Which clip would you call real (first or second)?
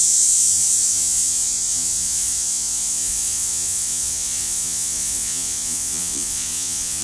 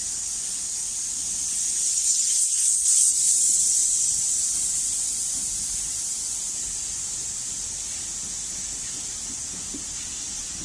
second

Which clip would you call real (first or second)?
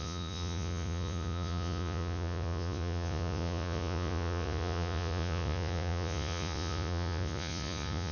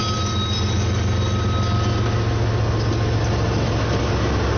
second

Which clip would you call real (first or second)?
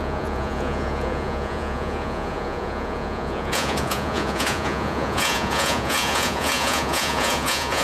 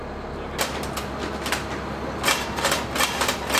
second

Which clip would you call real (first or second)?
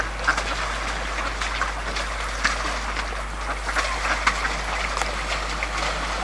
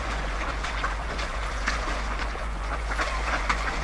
first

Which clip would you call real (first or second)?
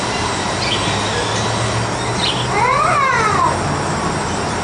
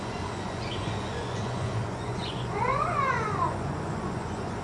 first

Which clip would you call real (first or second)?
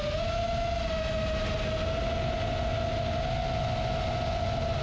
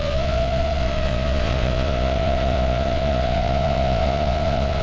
first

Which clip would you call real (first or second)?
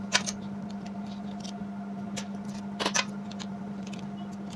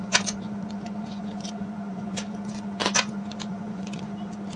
first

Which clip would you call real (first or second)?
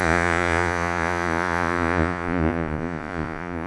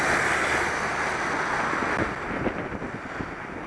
second